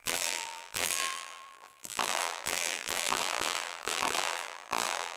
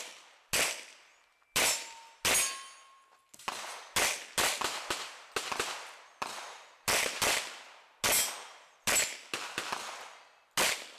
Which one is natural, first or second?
second